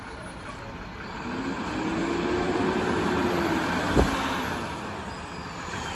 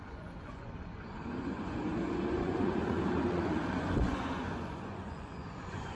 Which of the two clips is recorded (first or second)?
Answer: first